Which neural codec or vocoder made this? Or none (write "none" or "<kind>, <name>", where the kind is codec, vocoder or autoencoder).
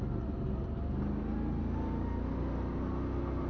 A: none